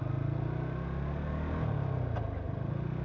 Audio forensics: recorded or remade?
recorded